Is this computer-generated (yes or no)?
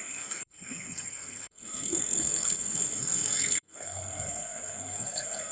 yes